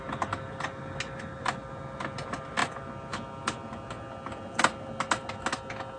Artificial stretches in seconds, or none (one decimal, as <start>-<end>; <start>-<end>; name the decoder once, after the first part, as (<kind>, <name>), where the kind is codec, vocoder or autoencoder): none